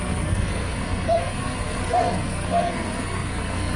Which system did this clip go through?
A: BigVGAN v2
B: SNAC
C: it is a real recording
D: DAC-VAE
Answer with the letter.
B